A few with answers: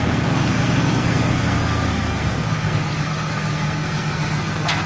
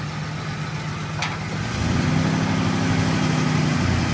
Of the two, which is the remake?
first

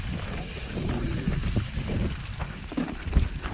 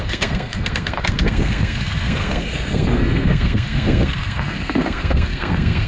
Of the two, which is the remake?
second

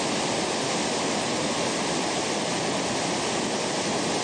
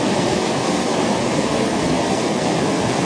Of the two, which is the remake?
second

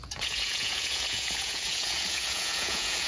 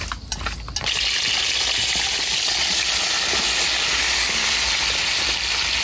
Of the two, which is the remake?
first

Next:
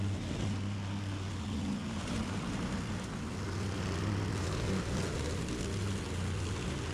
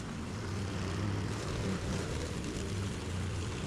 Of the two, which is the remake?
second